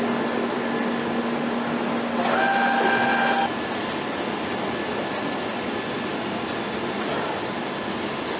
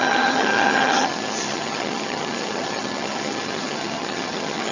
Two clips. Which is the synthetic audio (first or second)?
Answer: second